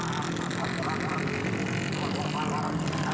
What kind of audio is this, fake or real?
real